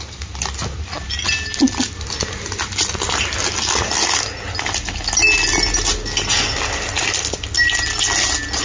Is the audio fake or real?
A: real